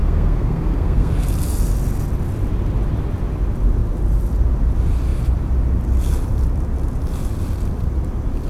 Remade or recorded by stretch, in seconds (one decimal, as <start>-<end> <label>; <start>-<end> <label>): 0.0-1.1 remade; 1.1-8.5 recorded